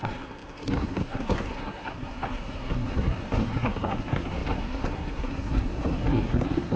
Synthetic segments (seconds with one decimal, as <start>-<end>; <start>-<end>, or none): 0.0-6.8